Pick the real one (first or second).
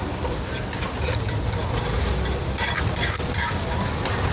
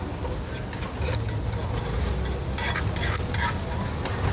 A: second